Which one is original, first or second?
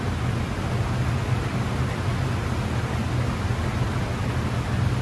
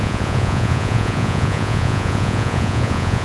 first